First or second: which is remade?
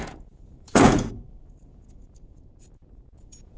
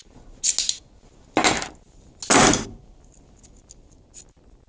first